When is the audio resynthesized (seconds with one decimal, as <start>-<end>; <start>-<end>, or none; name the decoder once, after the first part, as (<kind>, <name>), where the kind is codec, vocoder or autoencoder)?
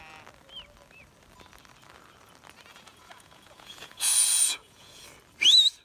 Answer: 2.7-5.0 (vocoder, Vocos)